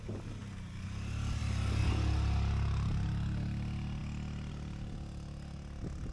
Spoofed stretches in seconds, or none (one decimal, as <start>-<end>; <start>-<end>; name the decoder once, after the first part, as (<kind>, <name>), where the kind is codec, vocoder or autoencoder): none